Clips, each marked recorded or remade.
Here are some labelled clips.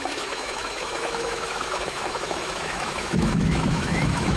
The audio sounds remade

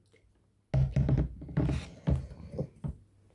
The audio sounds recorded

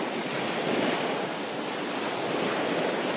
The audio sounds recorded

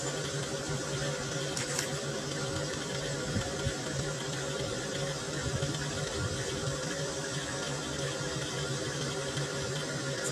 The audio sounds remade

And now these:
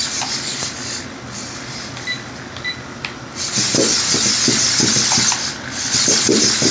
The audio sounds recorded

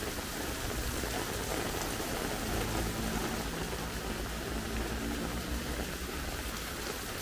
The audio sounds recorded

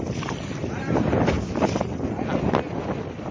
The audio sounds recorded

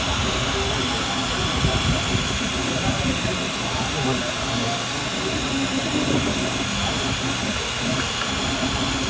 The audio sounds recorded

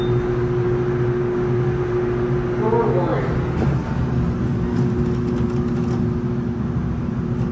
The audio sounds recorded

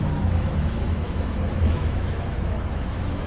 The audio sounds remade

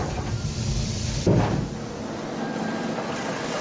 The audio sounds remade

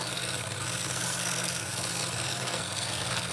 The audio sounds remade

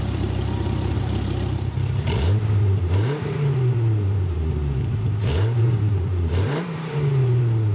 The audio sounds remade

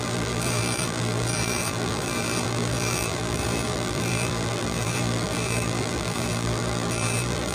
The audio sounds remade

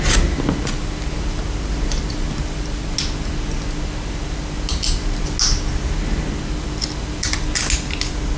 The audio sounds recorded